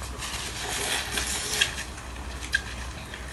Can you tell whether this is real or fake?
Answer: real